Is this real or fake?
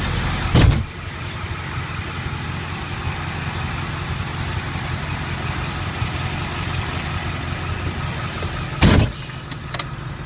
real